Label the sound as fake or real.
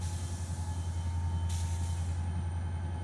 real